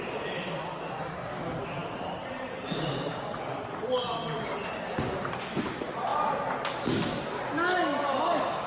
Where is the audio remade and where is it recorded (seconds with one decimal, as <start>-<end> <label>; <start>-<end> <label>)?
0.0-1.8 recorded; 1.8-4.7 remade; 4.7-8.7 recorded